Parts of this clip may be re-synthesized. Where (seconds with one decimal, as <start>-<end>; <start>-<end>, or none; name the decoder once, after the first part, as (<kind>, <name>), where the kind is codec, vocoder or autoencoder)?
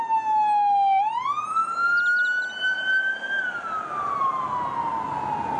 none